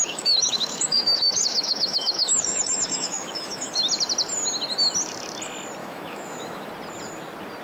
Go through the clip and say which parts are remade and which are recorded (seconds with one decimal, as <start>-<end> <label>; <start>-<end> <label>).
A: 0.0-3.8 remade; 3.8-5.8 recorded; 5.8-6.7 remade; 6.7-7.6 recorded